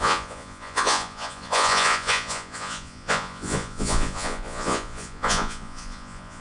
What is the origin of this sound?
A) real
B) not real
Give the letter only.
B